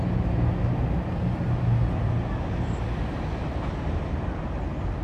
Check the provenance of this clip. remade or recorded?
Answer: recorded